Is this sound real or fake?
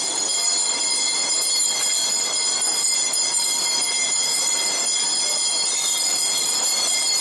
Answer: real